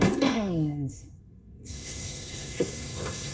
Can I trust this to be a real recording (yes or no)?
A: no